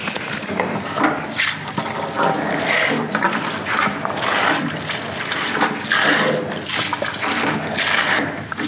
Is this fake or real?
real